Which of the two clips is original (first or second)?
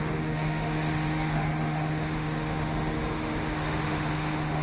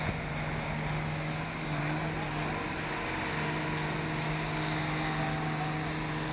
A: second